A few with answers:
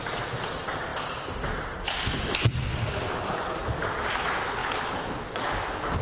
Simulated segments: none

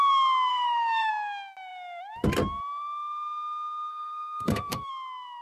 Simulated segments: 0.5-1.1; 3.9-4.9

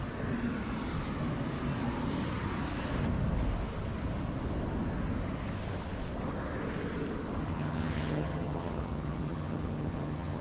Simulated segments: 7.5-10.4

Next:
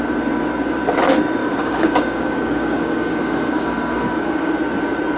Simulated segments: 1.4-4.5